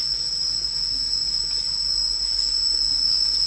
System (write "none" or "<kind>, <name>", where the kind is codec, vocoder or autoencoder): none